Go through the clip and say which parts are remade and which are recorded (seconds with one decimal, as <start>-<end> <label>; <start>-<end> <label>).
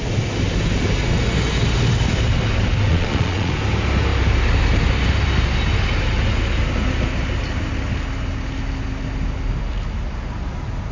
0.0-2.9 recorded; 2.9-3.5 remade; 3.5-10.9 recorded